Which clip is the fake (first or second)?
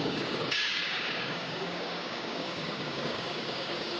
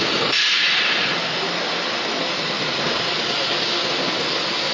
first